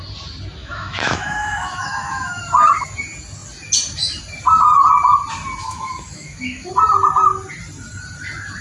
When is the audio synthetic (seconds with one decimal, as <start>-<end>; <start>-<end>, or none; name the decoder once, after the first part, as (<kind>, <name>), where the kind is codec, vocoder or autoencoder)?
0.6-2.4 (autoencoder, DAC-VAE); 5.6-6.7